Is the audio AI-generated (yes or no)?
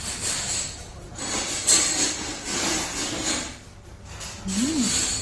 no